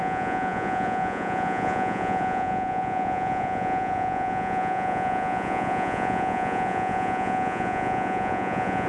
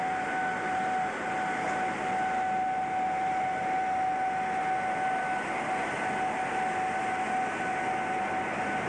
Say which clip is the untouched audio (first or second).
second